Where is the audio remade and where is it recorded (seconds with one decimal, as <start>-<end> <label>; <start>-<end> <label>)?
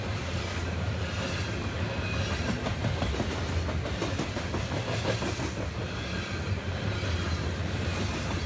0.0-8.5 recorded